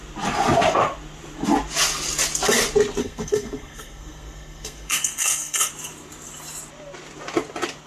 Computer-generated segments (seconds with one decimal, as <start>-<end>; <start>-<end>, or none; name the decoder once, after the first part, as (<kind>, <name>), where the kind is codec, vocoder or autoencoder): 3.0-5.7 (codec, SNAC)